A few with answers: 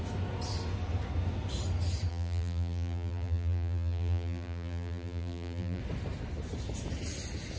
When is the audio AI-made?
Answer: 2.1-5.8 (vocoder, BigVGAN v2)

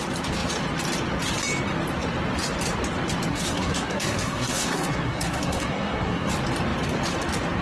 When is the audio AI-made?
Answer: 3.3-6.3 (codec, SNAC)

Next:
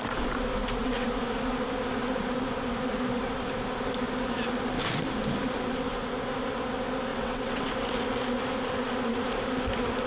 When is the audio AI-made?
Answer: 7.1-7.7 (vocoder, WaveNeXt)